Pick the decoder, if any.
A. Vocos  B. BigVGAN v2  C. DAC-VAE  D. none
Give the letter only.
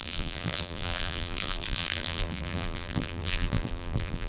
B